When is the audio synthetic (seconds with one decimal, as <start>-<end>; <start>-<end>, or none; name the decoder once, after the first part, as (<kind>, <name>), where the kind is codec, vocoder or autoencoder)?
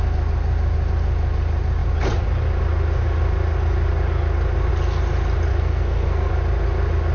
5.5-6.3 (codec, SNAC)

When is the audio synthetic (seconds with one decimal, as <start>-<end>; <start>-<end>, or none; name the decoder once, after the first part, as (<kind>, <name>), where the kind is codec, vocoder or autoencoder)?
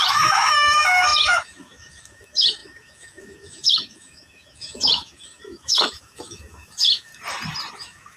0.0-7.1 (autoencoder, DAC-VAE); 7.7-8.2